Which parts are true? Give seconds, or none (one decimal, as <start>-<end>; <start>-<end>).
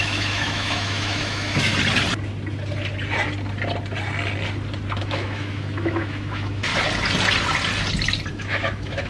1.7-5.0; 6.7-8.3